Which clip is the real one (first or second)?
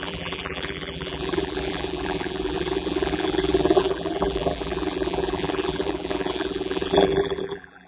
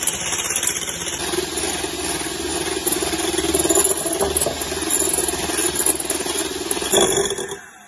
second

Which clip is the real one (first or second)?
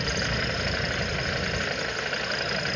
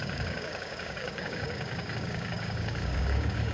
first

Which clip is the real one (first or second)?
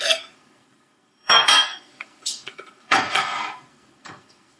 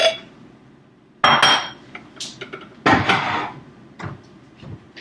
second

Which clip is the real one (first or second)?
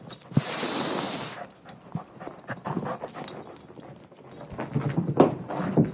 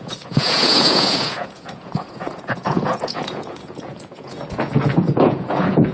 first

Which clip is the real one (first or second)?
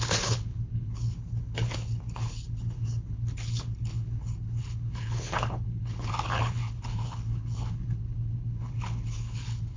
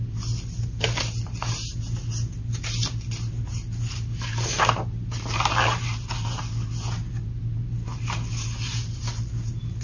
second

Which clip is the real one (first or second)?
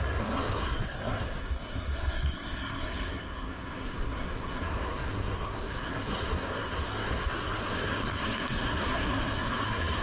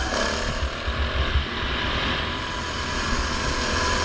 second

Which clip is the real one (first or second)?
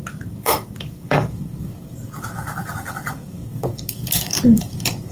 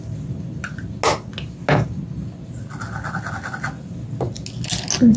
second